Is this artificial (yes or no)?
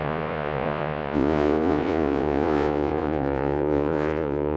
yes